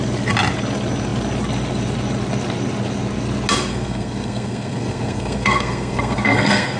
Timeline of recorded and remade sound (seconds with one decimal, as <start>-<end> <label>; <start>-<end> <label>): 0.0-3.7 recorded; 3.7-6.8 remade